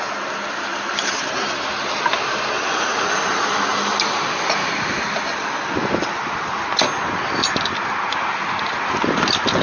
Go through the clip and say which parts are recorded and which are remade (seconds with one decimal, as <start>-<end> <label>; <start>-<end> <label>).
0.0-9.6 recorded